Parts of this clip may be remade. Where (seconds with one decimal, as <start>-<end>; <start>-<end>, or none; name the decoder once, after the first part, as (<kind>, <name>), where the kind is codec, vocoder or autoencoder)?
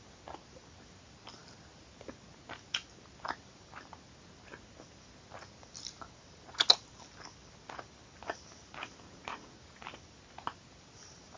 none